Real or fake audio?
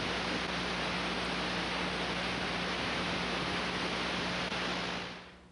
real